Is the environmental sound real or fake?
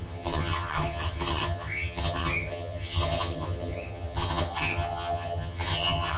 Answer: fake